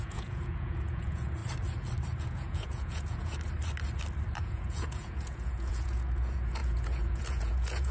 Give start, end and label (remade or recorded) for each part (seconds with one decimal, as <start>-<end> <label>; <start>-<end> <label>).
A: 0.0-1.4 remade; 1.4-2.2 recorded; 2.2-3.3 remade; 3.3-4.4 recorded; 4.4-7.9 remade